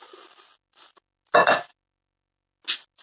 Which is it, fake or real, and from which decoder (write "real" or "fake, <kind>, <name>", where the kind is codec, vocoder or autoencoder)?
real